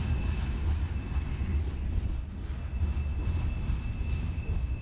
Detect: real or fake real